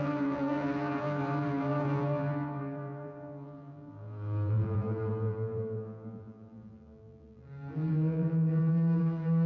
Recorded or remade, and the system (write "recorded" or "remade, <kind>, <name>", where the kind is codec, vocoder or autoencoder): remade, vocoder, BigVGAN v2